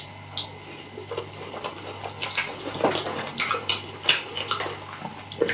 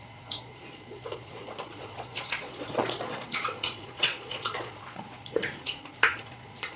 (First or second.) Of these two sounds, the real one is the first